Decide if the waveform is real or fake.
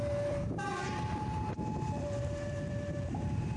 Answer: fake